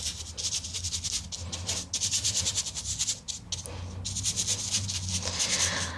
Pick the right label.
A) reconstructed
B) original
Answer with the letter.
B